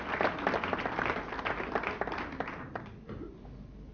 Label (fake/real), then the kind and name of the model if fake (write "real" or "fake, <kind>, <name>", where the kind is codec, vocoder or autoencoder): real